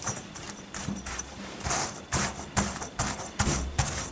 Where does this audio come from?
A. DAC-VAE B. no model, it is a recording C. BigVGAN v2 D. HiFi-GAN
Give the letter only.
C